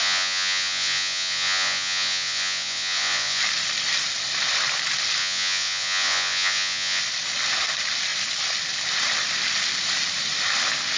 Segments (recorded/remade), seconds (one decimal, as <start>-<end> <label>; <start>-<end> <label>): 0.0-3.4 remade; 3.4-5.2 recorded; 5.2-7.0 remade; 7.0-11.0 recorded